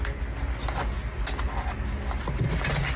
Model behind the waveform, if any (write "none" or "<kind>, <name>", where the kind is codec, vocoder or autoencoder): none